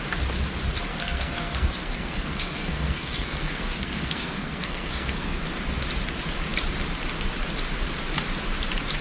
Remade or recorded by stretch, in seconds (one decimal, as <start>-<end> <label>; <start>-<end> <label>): 0.0-0.9 recorded; 0.9-5.4 remade; 5.4-9.0 recorded